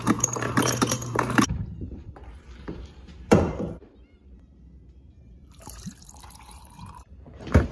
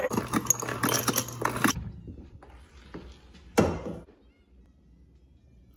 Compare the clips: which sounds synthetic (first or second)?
first